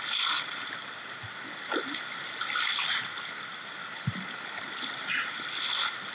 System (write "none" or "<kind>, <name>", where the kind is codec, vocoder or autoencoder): none